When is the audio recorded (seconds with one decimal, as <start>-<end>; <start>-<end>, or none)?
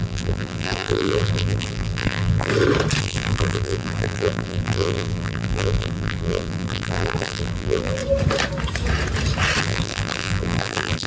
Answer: 2.5-3.0; 8.0-9.6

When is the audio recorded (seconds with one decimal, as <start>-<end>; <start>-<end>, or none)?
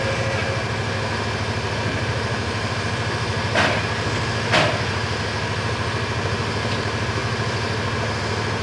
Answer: 0.0-1.9; 2.8-8.6